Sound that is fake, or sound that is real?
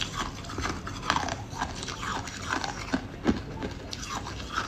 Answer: real